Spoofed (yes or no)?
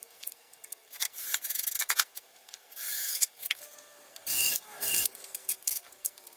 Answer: yes